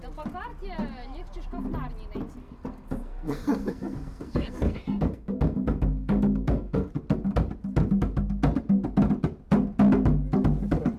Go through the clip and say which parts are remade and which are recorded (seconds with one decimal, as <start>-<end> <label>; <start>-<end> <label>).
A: 0.0-2.4 recorded; 2.4-6.9 remade; 6.9-11.0 recorded